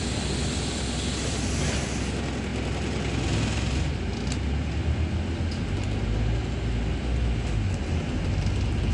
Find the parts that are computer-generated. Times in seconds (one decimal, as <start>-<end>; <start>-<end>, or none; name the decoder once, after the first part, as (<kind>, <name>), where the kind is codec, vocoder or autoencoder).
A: none